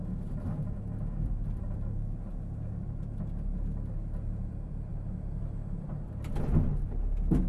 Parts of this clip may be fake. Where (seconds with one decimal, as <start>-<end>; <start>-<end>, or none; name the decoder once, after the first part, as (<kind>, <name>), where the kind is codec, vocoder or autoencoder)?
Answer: none